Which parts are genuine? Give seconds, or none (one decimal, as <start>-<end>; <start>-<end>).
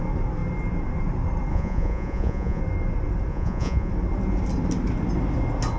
0.0-1.5; 2.6-3.3; 3.9-5.8